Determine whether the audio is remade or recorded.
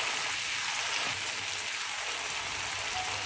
recorded